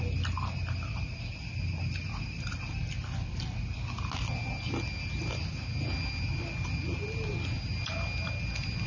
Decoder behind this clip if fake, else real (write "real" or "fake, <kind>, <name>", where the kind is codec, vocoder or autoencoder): real